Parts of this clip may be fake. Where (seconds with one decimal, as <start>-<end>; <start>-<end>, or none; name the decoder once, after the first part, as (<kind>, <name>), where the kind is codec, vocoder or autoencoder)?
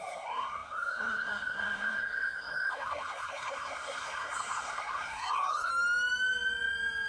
0.0-5.7 (codec, SNAC)